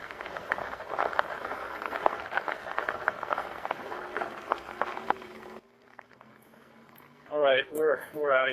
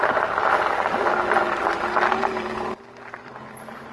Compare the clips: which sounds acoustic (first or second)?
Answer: second